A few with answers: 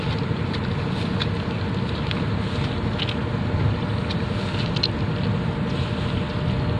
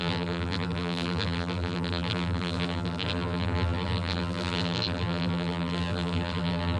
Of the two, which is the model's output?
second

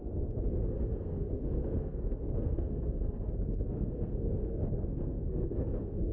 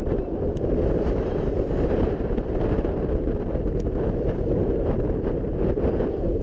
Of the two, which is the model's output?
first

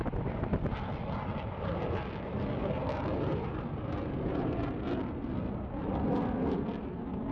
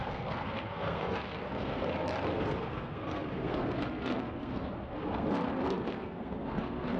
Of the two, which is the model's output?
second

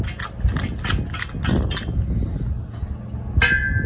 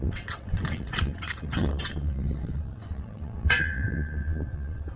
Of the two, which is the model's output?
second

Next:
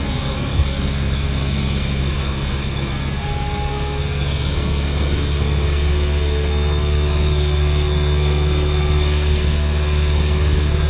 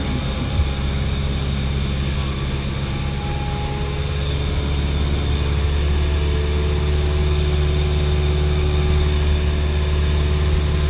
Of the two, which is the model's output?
first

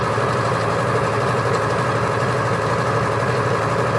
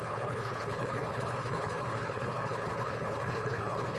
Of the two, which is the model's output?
second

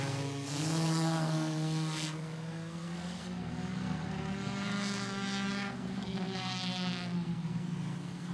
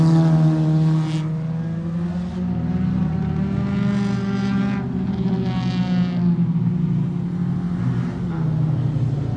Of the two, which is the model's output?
first